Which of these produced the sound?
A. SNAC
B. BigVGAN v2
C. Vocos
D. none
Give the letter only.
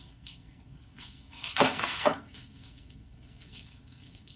A